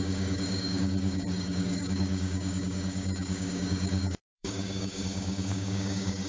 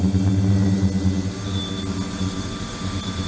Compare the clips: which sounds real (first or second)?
second